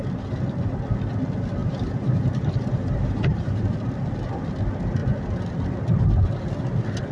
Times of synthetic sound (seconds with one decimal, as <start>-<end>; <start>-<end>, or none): 1.6-3.6